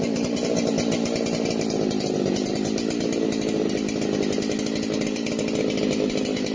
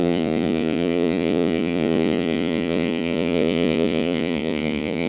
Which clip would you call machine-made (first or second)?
second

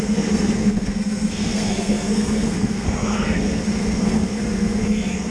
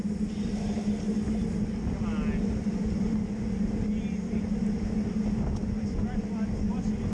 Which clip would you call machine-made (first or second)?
first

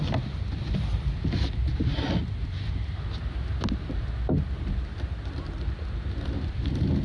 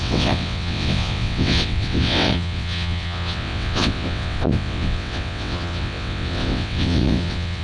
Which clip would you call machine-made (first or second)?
second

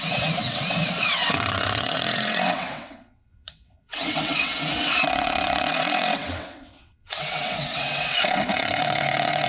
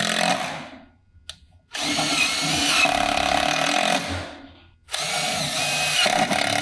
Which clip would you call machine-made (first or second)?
first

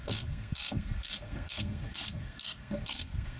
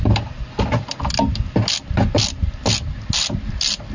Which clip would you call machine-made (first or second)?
first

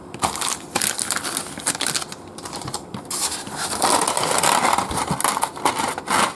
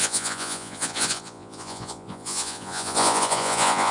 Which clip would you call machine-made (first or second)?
second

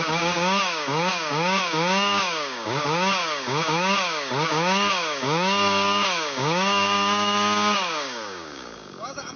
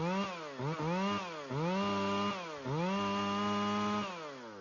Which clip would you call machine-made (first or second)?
first